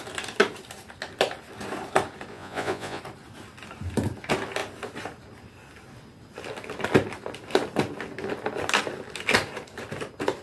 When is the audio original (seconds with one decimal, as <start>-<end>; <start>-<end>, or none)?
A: 0.0-2.3; 3.0-10.4